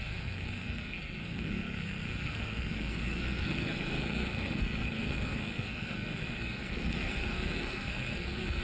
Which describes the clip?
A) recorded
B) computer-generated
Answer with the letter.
B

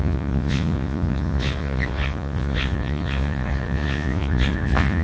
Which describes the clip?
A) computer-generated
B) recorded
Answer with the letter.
A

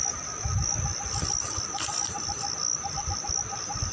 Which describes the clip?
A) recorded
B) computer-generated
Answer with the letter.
A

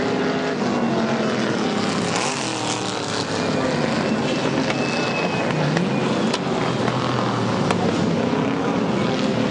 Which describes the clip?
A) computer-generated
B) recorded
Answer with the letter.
B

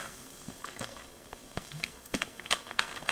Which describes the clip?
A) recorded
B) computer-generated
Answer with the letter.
B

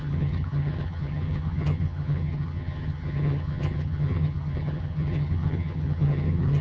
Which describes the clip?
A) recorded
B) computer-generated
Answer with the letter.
B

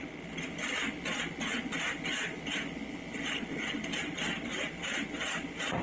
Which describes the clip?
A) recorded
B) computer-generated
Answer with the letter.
A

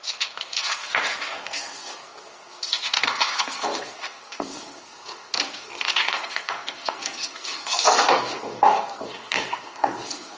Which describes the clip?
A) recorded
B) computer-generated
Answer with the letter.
B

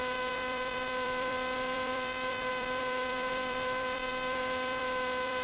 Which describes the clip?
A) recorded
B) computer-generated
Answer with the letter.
B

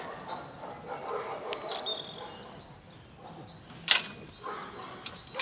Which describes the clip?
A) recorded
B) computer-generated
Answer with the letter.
A